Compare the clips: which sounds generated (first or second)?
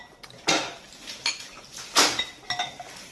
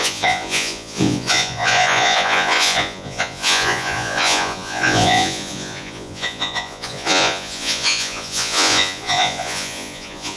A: second